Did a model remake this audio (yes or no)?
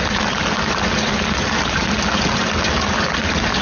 no